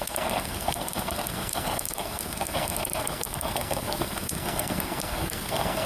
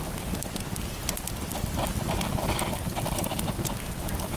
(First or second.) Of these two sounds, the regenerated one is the first